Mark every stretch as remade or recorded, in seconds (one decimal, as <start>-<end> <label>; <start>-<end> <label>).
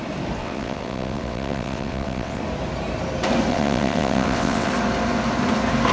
0.0-0.4 recorded; 0.4-2.4 remade; 2.4-3.5 recorded; 3.5-4.7 remade; 4.7-5.9 recorded